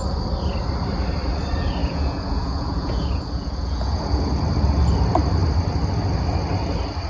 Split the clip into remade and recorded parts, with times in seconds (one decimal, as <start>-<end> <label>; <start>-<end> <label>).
0.0-1.8 recorded; 1.8-4.3 remade; 4.3-7.1 recorded